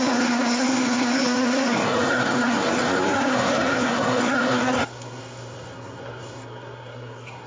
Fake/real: fake